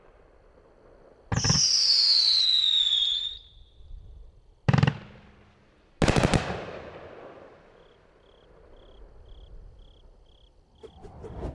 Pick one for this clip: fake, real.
real